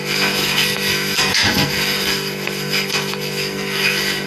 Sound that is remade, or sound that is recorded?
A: remade